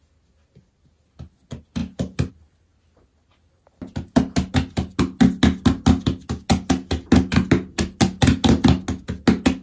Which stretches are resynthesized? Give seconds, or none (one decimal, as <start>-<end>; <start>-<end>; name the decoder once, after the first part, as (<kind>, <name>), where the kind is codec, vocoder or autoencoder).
none

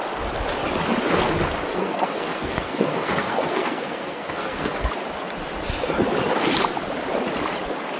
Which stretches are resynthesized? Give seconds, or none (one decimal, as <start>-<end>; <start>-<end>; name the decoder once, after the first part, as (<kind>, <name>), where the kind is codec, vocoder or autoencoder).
1.7-4.9 (codec, SNAC)

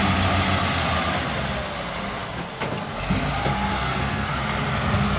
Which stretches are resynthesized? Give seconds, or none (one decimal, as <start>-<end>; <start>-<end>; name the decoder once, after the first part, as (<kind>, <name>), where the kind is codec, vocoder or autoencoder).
3.7-4.3 (codec, SNAC)

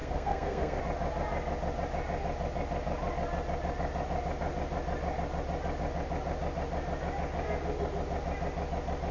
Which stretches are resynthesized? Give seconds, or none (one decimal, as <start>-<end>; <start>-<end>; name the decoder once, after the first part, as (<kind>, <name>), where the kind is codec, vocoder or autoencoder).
0.0-0.8 (codec, SNAC)

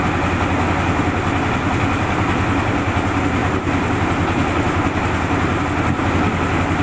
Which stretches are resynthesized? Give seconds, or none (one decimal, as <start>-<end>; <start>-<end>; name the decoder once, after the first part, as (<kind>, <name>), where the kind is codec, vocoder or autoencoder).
none